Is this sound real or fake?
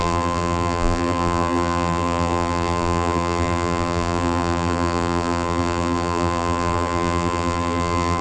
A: fake